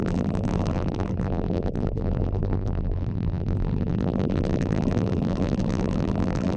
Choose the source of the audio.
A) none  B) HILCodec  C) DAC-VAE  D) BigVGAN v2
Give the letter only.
D